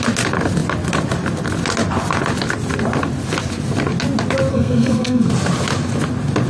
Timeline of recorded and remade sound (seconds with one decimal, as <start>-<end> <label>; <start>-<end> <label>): 0.0-4.5 recorded; 4.5-5.3 remade; 5.3-6.5 recorded

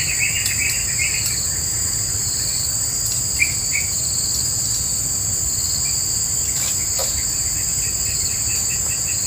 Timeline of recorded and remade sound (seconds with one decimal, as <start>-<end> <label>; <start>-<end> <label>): 0.0-9.3 recorded